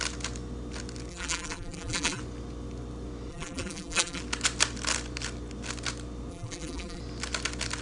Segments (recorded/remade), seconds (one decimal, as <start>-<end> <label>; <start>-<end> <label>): 0.0-1.1 recorded; 1.1-2.2 remade; 2.2-3.3 recorded; 3.3-4.2 remade; 4.2-6.3 recorded; 6.3-7.0 remade; 7.0-7.8 recorded